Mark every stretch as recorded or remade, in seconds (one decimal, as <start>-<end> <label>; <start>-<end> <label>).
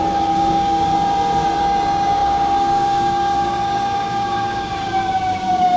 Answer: 0.0-0.9 remade; 0.9-1.6 recorded; 1.6-5.8 remade